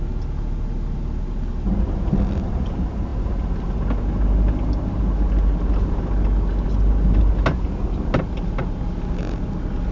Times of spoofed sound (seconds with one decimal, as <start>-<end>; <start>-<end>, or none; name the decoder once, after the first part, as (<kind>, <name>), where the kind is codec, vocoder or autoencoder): none